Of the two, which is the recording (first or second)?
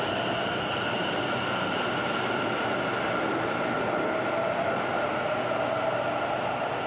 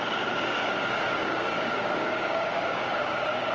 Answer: first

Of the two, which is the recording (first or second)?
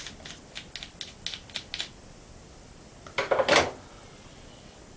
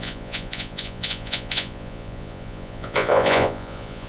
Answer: first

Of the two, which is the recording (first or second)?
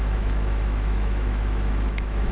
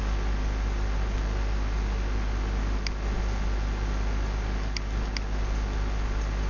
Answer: second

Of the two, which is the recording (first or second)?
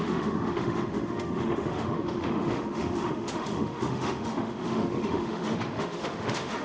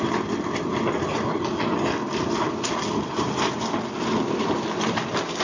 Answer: second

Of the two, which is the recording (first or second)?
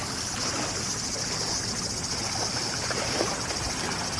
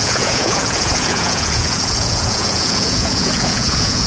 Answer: first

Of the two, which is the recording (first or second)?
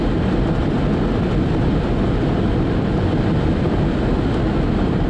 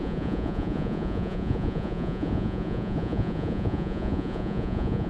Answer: first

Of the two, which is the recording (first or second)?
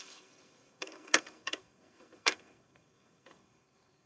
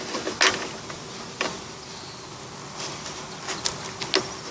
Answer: second